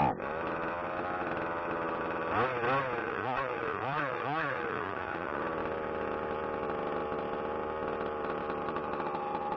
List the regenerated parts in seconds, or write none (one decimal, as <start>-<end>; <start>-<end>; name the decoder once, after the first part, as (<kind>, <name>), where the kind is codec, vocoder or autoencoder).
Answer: 3.0-5.4 (vocoder, Vocos)